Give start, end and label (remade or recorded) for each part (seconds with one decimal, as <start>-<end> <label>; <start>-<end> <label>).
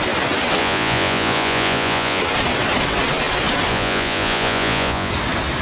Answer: 0.0-0.6 recorded; 0.6-2.2 remade; 2.2-3.7 recorded; 3.7-5.1 remade; 5.1-5.6 recorded